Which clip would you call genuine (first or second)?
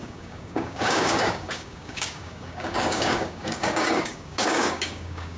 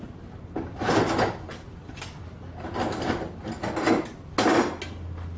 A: second